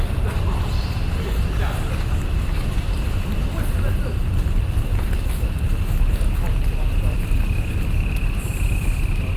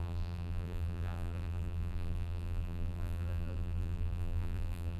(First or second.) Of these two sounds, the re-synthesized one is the second